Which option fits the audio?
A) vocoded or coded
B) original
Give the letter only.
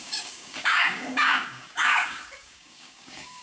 A